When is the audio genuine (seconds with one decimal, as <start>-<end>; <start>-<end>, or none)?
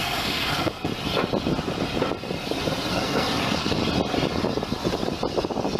0.9-2.9; 3.8-5.8